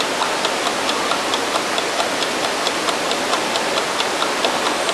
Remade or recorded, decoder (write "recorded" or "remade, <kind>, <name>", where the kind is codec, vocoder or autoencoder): recorded